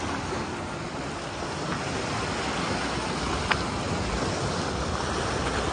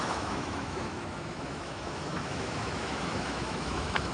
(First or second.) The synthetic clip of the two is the second